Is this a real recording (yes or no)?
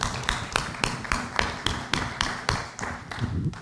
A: no